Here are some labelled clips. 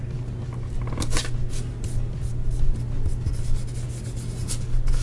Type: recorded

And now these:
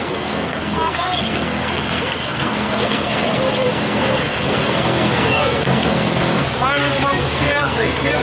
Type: remade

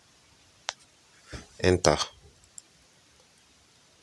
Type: recorded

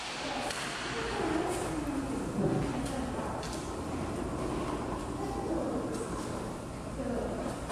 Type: recorded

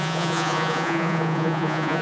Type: remade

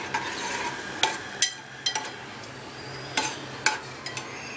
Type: recorded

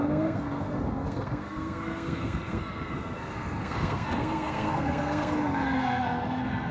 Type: remade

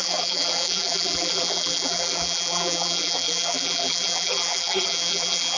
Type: remade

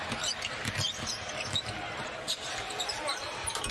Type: remade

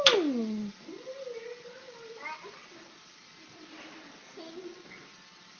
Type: recorded